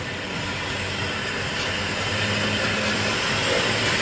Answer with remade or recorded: recorded